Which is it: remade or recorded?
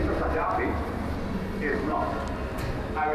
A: recorded